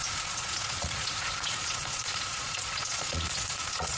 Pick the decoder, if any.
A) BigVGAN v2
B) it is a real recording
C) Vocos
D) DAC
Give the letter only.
C